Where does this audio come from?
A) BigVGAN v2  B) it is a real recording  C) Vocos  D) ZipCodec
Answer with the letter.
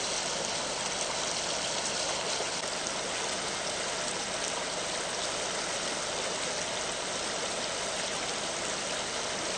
B